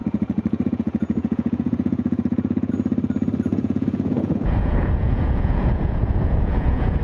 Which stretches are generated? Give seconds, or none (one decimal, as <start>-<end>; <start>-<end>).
0.0-2.7; 3.5-7.0